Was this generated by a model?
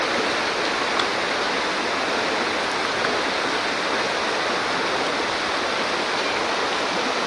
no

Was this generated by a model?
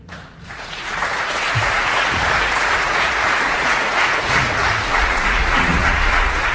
yes